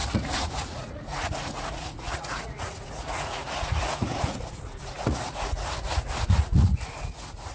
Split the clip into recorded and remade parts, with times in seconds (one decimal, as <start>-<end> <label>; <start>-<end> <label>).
0.0-7.5 remade